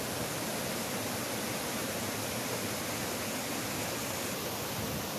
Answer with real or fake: real